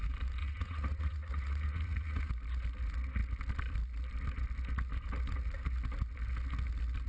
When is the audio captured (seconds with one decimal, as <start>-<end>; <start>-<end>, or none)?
0.0-0.4; 2.3-7.1